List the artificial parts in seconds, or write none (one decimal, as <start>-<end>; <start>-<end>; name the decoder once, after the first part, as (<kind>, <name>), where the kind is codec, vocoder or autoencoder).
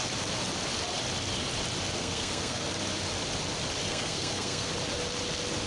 2.0-2.6 (codec, SNAC); 3.9-4.7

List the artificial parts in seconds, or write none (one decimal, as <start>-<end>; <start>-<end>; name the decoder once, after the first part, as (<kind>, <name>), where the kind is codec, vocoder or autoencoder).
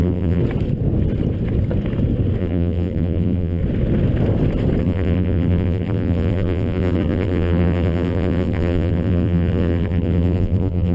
0.0-0.4 (vocoder, BigVGAN v2); 2.4-3.6; 4.8-10.9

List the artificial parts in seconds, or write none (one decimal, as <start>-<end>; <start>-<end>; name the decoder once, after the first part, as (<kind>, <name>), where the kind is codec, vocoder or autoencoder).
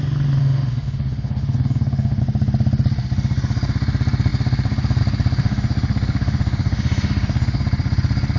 0.4-2.2 (autoencoder, DAC-VAE); 5.4-7.6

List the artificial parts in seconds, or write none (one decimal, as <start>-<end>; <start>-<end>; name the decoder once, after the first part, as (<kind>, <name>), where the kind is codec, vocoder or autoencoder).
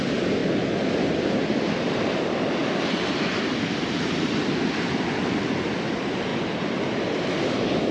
0.0-0.4 (vocoder, BigVGAN v2); 1.2-2.6; 3.5-6.3